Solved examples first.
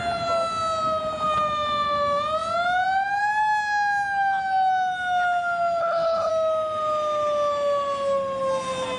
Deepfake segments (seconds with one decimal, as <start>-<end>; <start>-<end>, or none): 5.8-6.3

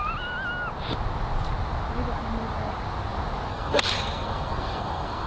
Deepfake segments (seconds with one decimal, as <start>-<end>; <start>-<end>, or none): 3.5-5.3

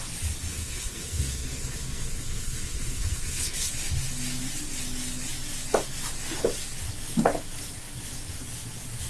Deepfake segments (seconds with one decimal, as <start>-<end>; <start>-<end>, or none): 0.5-3.7

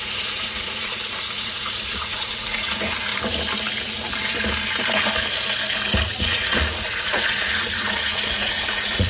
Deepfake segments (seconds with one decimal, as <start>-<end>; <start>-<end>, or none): 0.0-3.1; 6.2-9.1